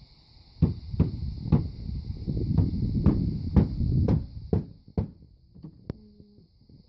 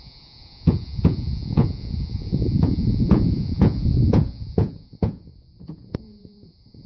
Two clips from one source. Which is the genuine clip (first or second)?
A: first